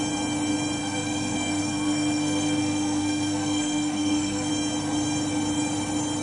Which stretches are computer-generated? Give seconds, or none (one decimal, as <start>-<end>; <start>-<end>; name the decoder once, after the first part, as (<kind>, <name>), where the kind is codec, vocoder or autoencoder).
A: 0.8-4.5 (codec, SNAC)